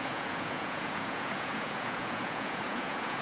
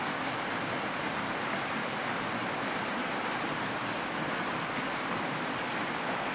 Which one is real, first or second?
second